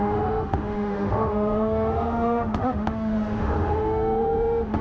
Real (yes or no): no